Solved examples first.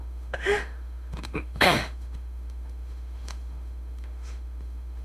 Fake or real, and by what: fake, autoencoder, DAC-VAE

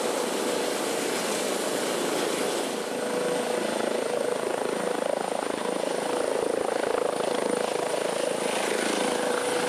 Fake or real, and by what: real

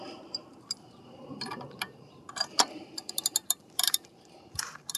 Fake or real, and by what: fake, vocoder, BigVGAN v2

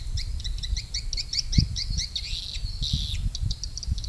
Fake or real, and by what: real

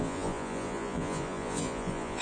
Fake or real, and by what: fake, vocoder, Vocos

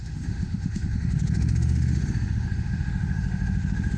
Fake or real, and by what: fake, autoencoder, DAC-VAE